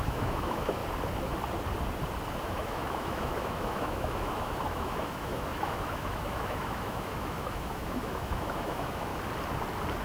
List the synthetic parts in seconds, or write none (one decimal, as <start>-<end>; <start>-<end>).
0.0-0.8; 2.4-9.1